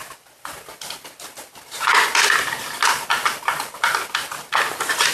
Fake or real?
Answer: real